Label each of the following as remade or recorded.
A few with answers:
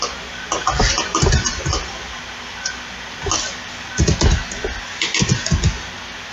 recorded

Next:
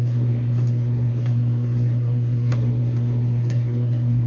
remade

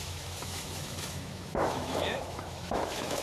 remade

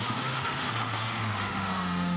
remade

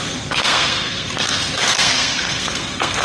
remade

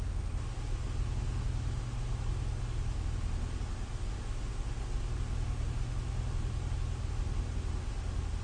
recorded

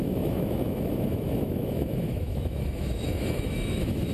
remade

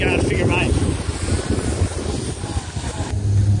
recorded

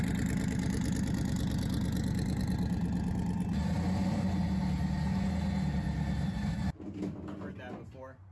recorded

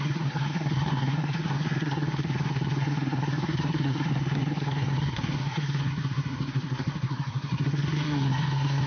remade